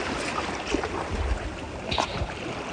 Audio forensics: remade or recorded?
recorded